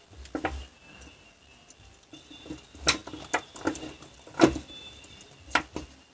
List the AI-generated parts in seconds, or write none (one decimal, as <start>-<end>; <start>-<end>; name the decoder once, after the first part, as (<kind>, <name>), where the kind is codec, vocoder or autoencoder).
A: none